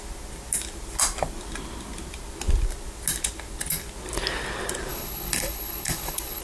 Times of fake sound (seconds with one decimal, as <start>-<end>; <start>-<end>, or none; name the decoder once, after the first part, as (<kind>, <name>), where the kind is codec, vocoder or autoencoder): 4.9-6.4 (codec, HILCodec)